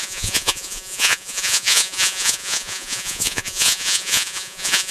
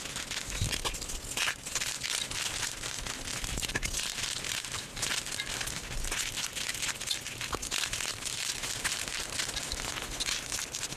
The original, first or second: second